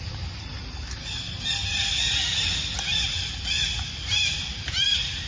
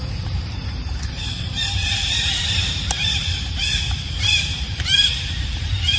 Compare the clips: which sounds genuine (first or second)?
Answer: first